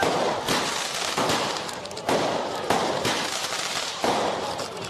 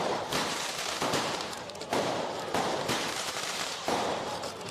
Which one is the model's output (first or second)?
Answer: second